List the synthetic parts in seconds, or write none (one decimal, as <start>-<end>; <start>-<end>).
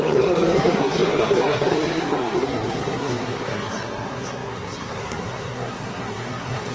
0.0-6.7